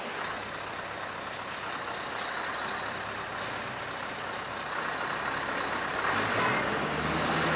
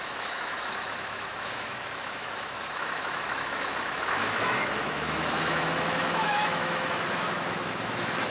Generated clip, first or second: second